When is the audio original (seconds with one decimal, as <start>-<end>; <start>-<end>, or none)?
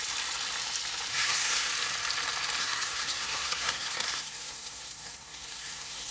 0.0-1.1; 1.7-2.6